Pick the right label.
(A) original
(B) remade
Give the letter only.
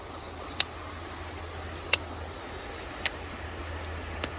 A